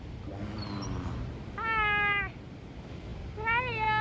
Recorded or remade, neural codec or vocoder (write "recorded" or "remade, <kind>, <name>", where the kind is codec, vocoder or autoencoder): recorded